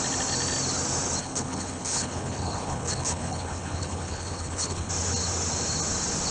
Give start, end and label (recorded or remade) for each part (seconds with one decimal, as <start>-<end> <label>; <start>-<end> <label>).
0.0-1.2 recorded; 1.2-4.9 remade; 4.9-6.3 recorded